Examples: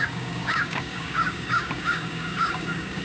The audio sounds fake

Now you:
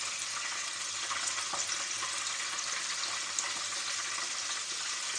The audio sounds real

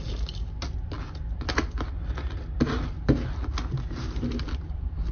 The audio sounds real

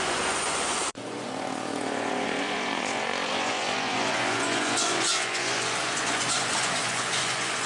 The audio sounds fake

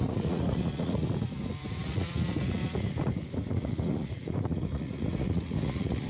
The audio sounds fake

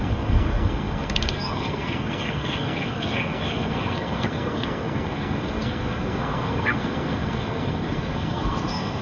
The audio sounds fake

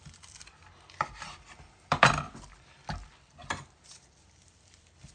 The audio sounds fake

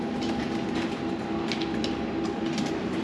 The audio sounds real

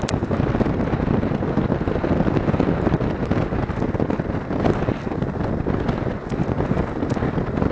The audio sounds real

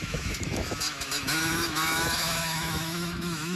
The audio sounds fake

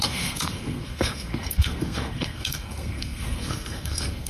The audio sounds fake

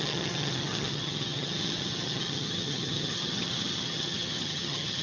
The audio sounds fake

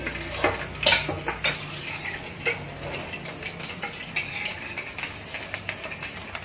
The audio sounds real